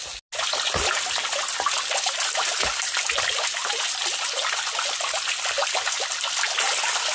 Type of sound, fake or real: real